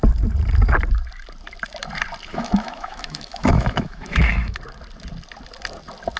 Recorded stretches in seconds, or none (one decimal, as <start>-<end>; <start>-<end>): 0.0-2.3; 4.6-6.2